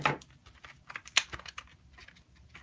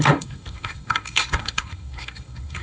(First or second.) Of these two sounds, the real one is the first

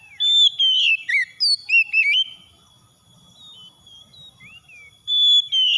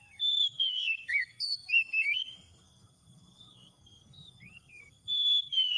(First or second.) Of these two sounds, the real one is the first